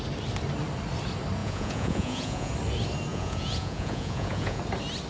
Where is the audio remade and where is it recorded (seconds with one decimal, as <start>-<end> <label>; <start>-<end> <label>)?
0.0-1.4 recorded; 1.4-2.5 remade; 2.5-3.1 recorded; 3.1-4.6 remade; 4.6-5.1 recorded